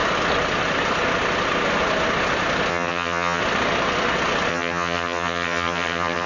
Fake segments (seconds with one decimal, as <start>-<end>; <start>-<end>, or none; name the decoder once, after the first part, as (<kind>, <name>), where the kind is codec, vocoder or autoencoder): 2.7-3.4 (vocoder, HiFi-GAN); 4.5-6.3